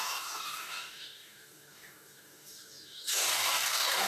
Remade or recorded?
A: remade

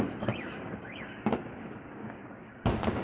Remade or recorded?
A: remade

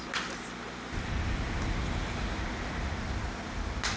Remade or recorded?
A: recorded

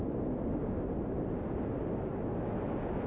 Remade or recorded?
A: recorded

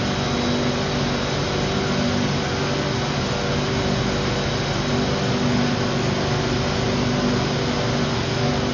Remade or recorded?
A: recorded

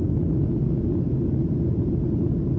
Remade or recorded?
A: recorded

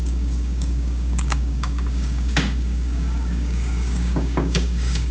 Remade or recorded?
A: remade